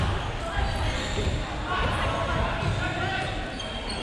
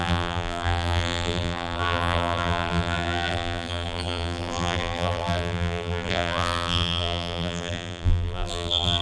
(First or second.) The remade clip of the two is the second